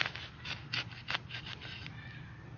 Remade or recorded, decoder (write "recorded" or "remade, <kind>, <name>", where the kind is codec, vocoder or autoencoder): recorded